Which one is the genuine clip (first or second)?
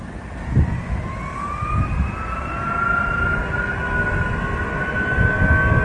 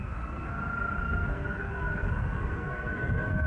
first